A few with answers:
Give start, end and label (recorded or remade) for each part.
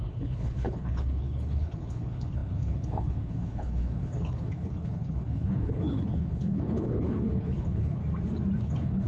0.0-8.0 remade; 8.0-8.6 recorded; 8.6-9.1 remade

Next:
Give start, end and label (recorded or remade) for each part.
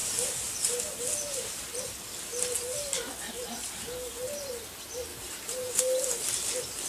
0.0-5.1 recorded; 5.1-5.8 remade; 5.8-6.9 recorded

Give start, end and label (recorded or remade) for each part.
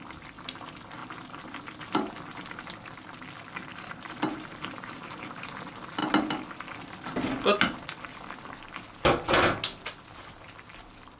0.0-3.7 recorded; 3.7-5.6 remade; 5.6-11.2 recorded